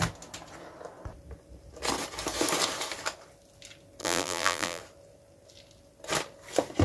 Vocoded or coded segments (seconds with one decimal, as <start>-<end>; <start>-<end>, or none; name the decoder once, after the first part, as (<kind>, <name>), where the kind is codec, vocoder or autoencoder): 4.0-4.8 (vocoder, BigVGAN v2)